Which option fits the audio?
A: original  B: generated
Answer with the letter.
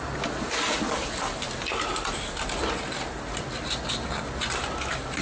A